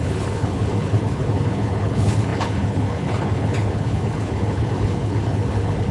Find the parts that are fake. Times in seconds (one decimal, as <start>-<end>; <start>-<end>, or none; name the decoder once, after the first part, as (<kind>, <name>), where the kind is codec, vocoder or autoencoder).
0.0-5.9 (codec, HILCodec)